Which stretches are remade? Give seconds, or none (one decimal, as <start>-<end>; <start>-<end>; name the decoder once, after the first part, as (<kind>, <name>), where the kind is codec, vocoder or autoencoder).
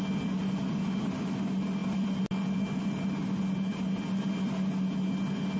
none